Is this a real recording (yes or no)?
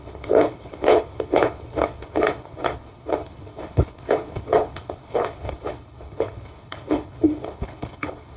no